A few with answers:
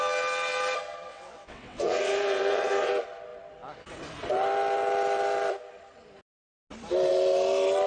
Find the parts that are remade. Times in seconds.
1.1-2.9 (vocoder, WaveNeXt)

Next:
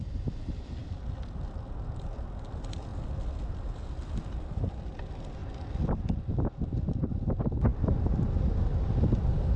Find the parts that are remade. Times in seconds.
none

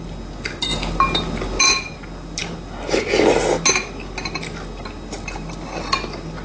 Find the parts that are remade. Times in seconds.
none

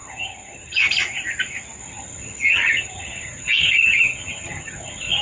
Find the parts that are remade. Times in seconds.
0.0-0.9 (vocoder, HiFi-GAN); 1.8-5.2

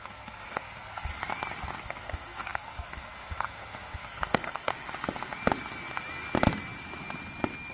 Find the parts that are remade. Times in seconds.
0.0-1.1 (codec, SNAC); 1.8-4.7